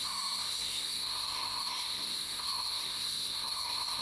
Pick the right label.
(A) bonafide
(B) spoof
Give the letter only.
B